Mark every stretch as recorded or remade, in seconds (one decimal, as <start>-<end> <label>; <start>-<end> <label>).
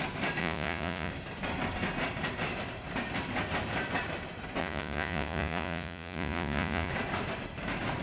0.0-0.4 recorded; 0.4-1.1 remade; 1.1-4.6 recorded; 4.6-6.9 remade; 6.9-8.0 recorded